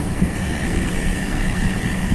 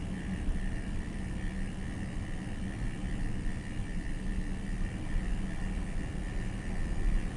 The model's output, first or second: first